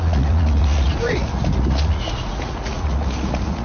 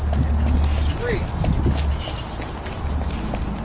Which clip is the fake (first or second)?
first